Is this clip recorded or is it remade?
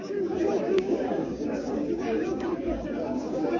remade